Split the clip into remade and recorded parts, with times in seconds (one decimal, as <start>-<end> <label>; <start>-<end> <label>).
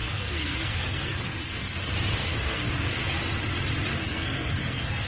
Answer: 0.0-1.8 remade; 1.8-2.2 recorded; 2.2-2.7 remade; 2.7-4.0 recorded; 4.0-5.1 remade